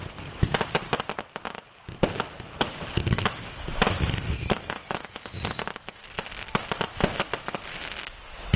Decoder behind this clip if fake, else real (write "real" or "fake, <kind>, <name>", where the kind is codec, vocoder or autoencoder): real